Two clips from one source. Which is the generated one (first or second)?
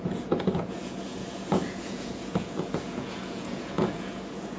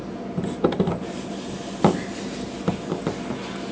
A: first